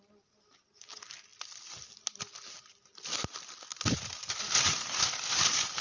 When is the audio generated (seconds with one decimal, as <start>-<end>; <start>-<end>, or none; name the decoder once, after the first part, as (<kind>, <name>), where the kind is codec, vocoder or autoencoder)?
none